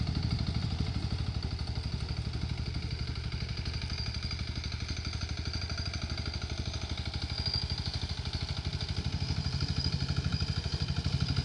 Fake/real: real